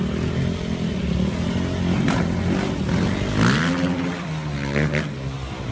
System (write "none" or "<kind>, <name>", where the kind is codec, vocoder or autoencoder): none